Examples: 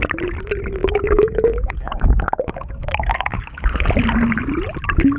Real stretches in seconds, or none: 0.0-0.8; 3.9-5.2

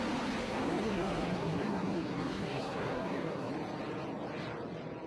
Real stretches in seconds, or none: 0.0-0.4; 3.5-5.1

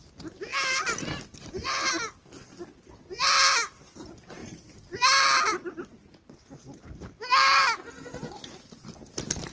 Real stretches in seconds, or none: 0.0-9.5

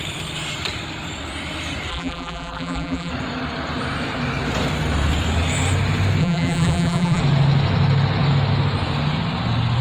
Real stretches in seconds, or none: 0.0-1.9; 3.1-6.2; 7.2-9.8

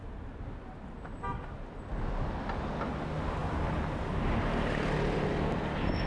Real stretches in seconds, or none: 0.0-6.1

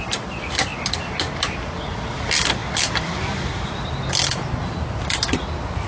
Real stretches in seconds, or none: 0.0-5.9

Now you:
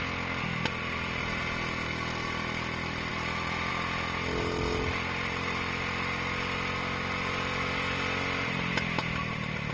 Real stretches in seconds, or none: 0.0-9.7

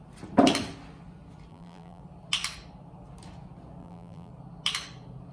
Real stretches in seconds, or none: 0.0-1.5; 2.0-3.8; 4.3-5.3